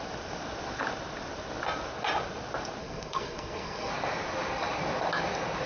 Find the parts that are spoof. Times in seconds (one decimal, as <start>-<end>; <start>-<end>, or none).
2.8-3.9